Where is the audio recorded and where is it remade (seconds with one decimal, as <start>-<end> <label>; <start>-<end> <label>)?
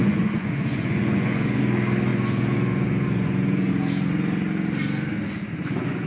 0.0-1.6 remade; 1.6-2.1 recorded; 2.1-3.7 remade; 3.7-5.6 recorded; 5.6-6.1 remade